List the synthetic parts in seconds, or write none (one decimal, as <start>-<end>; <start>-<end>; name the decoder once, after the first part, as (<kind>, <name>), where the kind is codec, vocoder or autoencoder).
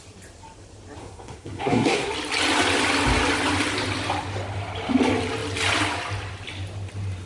1.0-2.1 (codec, SNAC)